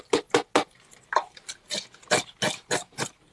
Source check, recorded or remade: recorded